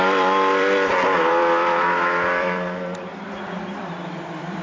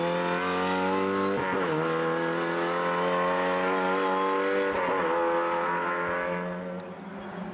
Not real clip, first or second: first